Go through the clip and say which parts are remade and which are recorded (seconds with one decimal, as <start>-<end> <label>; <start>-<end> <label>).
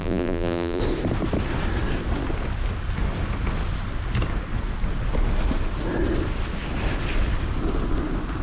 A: 0.0-0.8 remade; 0.8-8.4 recorded